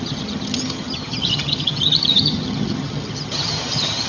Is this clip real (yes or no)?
no